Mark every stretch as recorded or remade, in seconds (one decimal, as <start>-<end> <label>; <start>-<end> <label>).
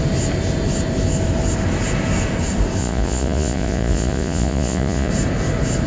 0.0-2.8 recorded; 2.8-5.1 remade; 5.1-5.9 recorded